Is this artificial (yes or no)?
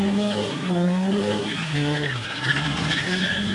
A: yes